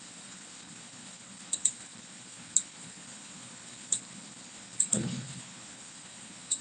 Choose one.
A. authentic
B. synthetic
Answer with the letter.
B